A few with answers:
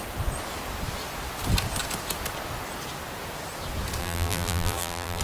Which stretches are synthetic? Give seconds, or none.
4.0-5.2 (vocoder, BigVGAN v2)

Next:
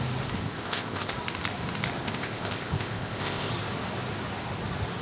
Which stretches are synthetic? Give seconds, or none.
0.4-1.1 (codec, ZipCodec); 2.0-3.5